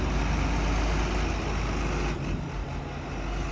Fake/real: real